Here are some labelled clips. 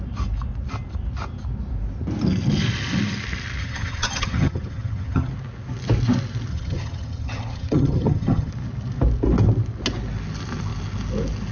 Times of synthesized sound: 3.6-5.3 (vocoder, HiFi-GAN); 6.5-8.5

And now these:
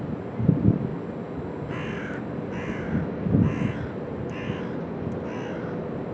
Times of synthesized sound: none